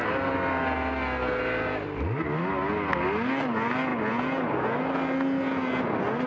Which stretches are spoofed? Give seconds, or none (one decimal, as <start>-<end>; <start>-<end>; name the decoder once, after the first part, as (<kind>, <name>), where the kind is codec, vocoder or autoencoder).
none